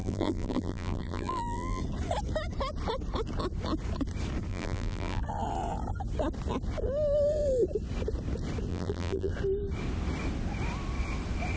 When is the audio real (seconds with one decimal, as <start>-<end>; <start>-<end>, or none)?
1.8-4.5; 5.2-8.7; 9.3-11.6